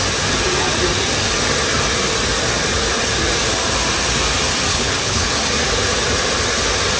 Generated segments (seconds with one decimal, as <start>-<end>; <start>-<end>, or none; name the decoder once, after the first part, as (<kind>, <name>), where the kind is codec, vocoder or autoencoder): 4.7-5.3 (codec, HILCodec)